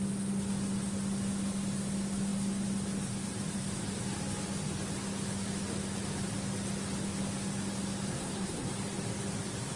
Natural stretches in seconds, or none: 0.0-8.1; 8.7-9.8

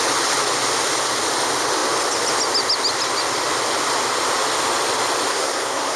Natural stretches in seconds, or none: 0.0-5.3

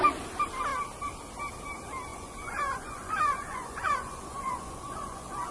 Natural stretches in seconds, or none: 0.0-2.1

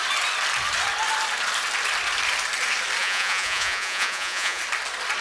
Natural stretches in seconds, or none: 0.0-3.0; 4.6-5.2

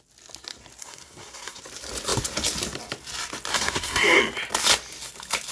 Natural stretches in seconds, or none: 0.0-0.8; 1.6-3.5; 4.2-5.5

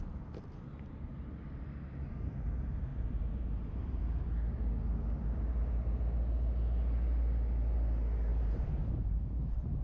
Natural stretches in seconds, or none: 0.0-2.9; 4.0-8.3

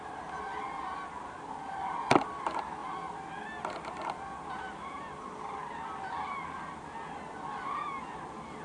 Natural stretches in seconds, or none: 0.0-8.6

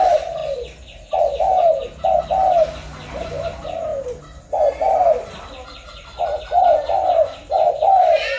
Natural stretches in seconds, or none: 0.4-3.1; 3.9-5.4; 7.4-8.4